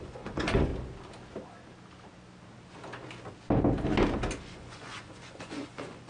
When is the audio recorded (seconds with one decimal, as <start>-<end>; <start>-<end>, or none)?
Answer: 0.7-4.4